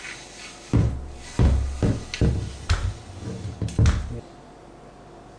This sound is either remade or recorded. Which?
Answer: recorded